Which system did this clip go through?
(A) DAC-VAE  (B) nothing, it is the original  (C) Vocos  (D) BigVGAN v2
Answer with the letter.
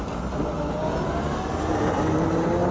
B